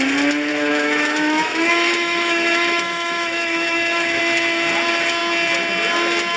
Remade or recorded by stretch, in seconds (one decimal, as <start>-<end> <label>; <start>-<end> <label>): 0.0-0.5 recorded; 0.5-4.2 remade; 4.2-6.4 recorded